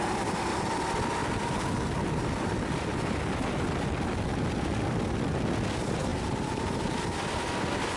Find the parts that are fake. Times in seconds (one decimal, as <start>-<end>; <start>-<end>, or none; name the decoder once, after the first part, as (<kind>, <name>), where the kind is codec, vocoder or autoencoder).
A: 6.1-7.0 (vocoder, BigVGAN v2)